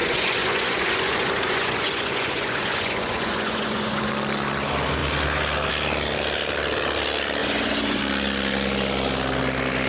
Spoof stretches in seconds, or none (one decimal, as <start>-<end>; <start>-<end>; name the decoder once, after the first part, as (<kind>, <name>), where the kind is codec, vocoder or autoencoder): 0.0-4.1 (vocoder, Vocos); 7.4-8.0